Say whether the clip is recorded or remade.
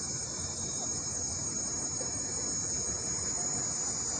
recorded